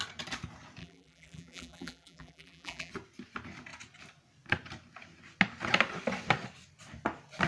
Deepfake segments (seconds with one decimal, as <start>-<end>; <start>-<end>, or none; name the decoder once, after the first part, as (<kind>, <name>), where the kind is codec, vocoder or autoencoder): 0.8-2.9 (vocoder, BigVGAN v2)